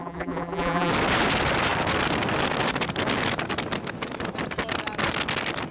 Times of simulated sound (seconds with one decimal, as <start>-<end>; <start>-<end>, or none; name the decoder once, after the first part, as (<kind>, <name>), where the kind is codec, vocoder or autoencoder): 0.0-0.9 (vocoder, BigVGAN v2)